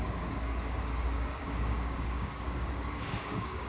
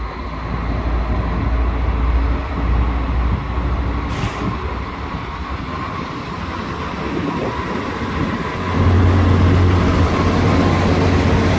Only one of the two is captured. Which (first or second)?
second